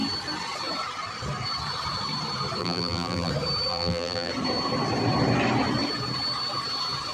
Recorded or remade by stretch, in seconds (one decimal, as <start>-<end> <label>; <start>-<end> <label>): 0.0-2.6 recorded; 2.6-3.3 remade; 3.3-3.7 recorded; 3.7-4.3 remade; 4.3-7.1 recorded